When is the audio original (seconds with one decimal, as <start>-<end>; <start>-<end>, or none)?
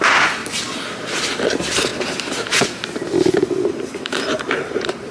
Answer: 0.4-1.4; 1.9-3.7